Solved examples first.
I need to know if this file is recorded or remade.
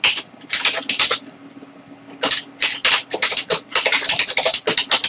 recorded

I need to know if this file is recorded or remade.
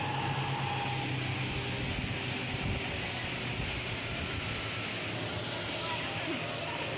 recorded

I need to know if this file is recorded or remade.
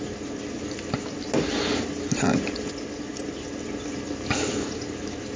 recorded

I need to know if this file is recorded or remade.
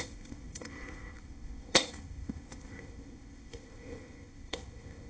remade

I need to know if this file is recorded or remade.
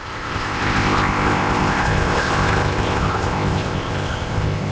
remade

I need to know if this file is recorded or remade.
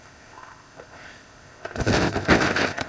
remade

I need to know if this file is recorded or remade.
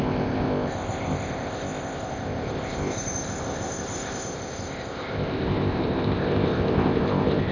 remade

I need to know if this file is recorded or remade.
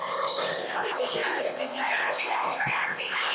remade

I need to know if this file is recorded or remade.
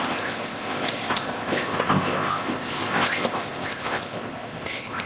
remade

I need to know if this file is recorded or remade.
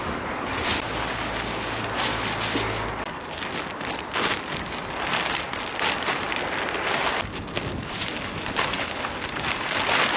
recorded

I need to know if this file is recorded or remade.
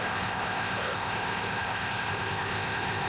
remade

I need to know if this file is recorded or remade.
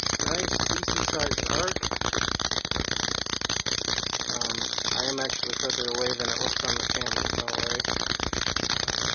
recorded